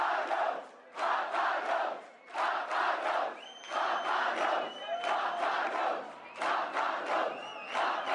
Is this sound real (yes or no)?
yes